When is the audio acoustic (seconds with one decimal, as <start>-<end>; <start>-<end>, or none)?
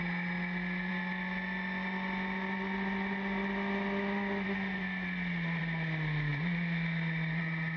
0.0-7.8